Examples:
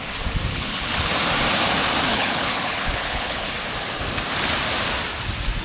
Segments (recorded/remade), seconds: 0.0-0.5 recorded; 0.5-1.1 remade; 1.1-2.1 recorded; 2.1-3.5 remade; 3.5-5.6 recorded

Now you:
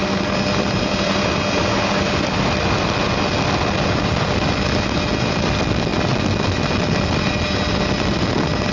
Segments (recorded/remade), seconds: 0.0-8.7 recorded

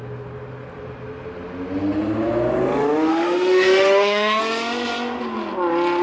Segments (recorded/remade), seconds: 0.0-3.1 recorded; 3.1-4.4 remade; 4.4-6.0 recorded